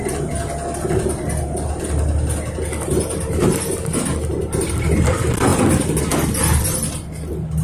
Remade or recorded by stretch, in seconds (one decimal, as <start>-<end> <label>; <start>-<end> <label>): 0.0-7.6 recorded